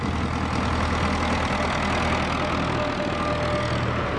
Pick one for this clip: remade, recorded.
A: recorded